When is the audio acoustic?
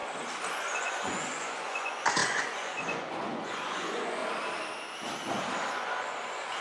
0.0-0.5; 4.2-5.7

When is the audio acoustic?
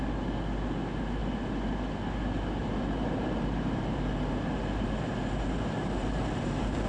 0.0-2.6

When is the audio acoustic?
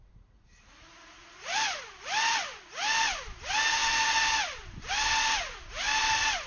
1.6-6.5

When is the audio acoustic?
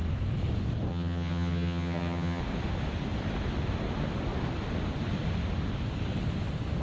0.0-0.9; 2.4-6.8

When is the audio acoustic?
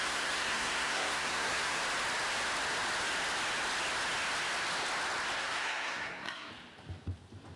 1.8-5.4; 6.5-7.6